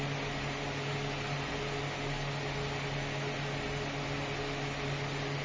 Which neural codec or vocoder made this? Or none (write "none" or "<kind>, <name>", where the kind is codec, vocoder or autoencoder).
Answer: none